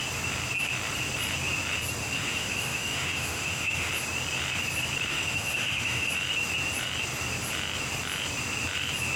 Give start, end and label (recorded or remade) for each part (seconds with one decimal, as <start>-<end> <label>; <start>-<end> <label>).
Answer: 0.0-2.0 recorded; 2.0-3.9 remade; 3.9-5.1 recorded; 5.1-6.1 remade; 6.1-9.2 recorded